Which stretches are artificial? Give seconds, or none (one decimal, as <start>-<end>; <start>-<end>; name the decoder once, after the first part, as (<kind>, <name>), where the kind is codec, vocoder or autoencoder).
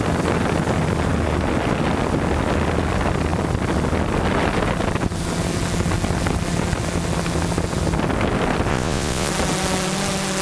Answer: 8.7-9.3 (vocoder, Vocos)